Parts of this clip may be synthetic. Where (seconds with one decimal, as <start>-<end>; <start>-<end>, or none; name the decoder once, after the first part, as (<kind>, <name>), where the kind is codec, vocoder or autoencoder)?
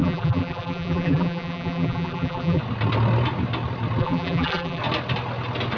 0.0-2.6 (vocoder, BigVGAN v2); 4.0-4.8